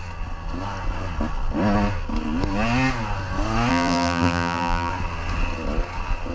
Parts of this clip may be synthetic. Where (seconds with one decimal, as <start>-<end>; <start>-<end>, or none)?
3.7-4.9